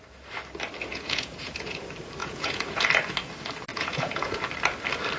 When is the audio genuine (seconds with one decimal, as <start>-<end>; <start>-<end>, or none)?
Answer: 0.0-0.9; 1.8-2.2; 2.8-3.7; 4.4-5.2